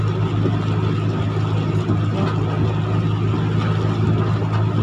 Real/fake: real